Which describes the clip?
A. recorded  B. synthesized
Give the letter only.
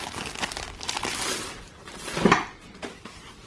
A